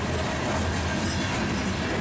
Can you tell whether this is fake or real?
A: real